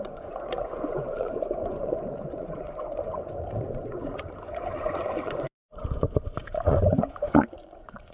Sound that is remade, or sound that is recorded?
remade